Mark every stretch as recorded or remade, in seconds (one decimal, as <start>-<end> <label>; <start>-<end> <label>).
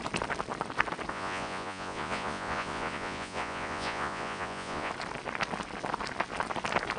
0.0-1.1 recorded; 1.1-4.9 remade; 4.9-7.0 recorded